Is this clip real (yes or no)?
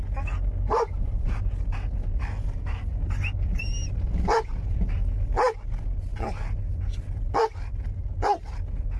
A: yes